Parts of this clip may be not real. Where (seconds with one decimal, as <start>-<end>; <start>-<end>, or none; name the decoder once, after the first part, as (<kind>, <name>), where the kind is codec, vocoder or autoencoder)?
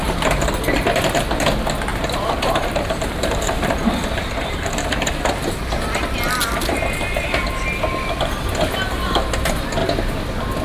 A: 0.0-0.5 (vocoder, BigVGAN v2); 1.9-5.1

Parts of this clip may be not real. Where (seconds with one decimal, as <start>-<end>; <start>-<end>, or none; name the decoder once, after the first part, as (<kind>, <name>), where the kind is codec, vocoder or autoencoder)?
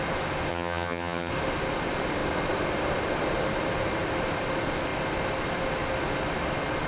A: 0.5-1.3 (vocoder, HiFi-GAN)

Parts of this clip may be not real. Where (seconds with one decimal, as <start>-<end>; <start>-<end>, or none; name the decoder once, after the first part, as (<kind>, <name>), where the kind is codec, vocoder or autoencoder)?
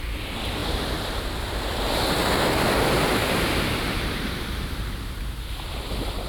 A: 0.6-1.2 (vocoder, BigVGAN v2); 2.2-4.9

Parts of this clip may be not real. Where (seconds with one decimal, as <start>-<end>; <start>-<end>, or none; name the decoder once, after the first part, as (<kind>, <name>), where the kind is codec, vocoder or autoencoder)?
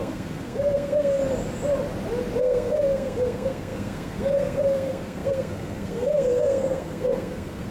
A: 0.0-1.2 (codec, SNAC); 2.4-7.7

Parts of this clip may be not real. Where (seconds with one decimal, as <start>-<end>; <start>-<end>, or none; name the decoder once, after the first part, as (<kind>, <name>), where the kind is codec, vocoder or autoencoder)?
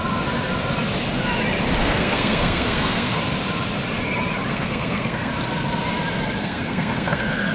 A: 1.8-3.2 (codec, SNAC); 4.5-5.3; 6.4-7.5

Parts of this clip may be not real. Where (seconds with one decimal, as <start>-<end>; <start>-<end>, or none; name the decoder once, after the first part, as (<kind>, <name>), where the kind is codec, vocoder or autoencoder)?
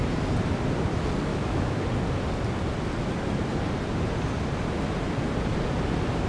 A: 1.3-1.8 (autoencoder, DAC-VAE)